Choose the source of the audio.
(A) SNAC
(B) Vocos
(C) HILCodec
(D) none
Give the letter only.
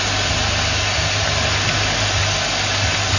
D